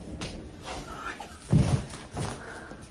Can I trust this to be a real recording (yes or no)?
yes